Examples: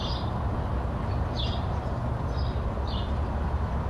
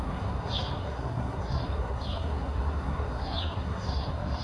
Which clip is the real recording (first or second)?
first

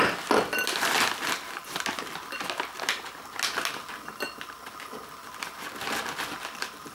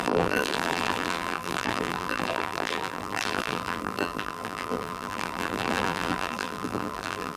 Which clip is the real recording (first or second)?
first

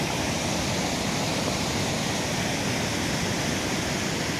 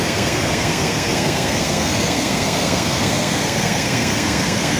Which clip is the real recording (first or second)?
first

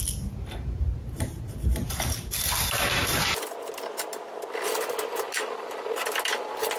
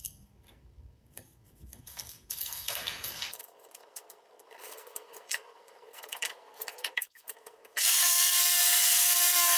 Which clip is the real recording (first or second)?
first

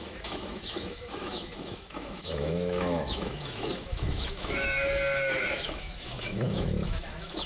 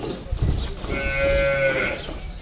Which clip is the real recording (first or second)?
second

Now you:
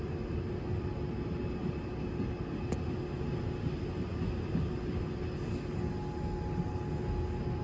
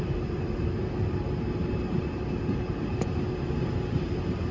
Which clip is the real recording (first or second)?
first